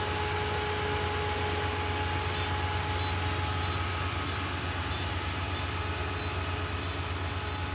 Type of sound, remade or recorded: recorded